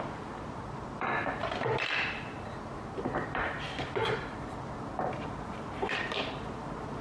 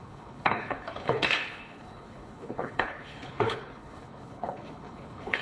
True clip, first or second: first